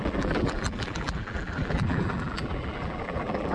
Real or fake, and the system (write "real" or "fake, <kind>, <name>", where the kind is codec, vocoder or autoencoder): fake, vocoder, BigVGAN v2